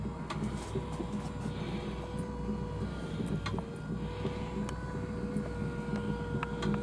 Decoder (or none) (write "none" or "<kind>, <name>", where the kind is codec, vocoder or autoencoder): none